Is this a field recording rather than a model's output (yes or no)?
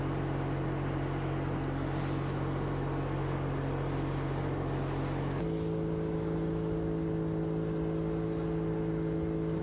yes